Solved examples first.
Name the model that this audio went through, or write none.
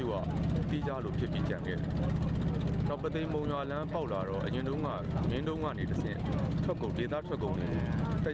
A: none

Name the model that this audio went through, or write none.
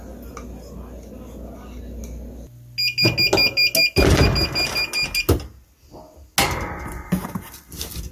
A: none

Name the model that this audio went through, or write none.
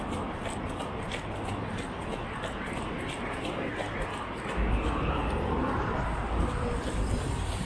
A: none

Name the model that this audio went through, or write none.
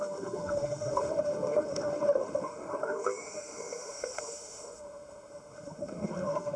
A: autoencoder, DAC-VAE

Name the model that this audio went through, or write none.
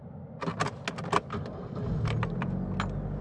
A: none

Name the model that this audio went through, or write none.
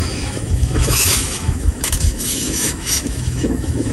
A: autoencoder, DAC-VAE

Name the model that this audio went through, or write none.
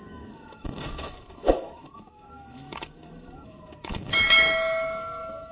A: autoencoder, DAC-VAE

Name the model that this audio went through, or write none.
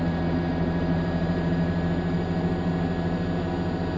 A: none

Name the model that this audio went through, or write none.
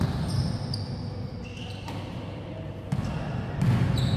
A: none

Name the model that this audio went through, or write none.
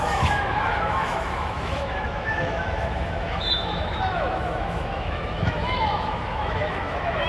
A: autoencoder, DAC-VAE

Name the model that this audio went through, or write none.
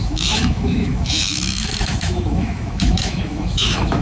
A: autoencoder, DAC-VAE